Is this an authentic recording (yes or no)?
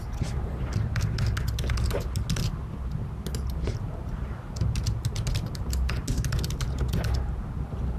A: yes